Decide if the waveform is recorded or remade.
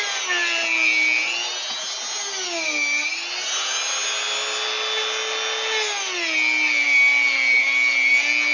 recorded